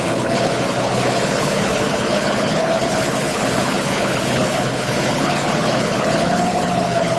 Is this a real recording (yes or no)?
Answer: no